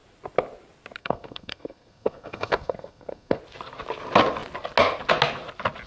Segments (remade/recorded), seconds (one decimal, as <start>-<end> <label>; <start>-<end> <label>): 0.0-1.0 recorded; 1.0-3.4 remade; 3.4-5.9 recorded